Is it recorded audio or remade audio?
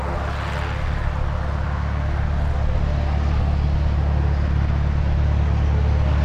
recorded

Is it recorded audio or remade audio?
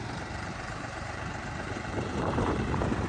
remade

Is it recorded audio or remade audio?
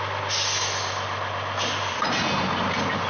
recorded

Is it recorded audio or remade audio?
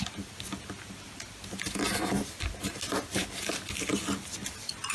recorded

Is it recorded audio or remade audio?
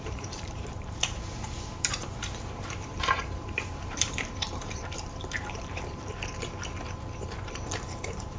remade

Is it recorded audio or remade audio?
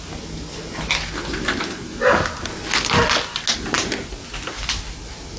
recorded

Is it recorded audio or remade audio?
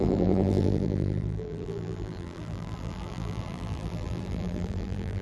remade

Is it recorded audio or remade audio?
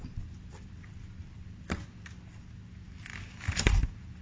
remade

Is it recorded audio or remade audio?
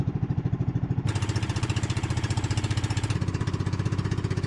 remade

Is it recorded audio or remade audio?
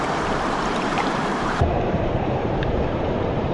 remade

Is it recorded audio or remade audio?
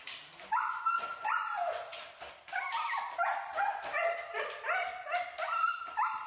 remade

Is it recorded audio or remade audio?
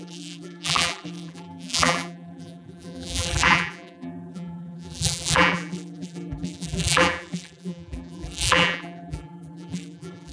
remade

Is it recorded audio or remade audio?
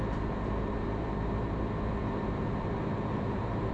remade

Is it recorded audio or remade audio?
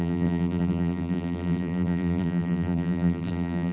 remade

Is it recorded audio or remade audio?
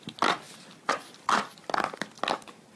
recorded